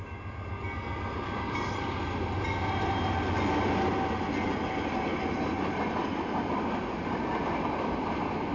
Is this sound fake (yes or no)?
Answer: no